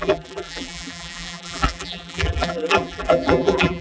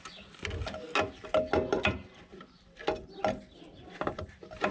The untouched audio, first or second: second